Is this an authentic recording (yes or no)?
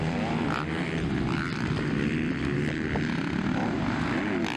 yes